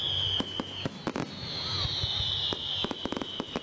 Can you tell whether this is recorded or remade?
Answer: recorded